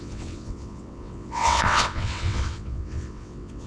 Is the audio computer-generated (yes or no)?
yes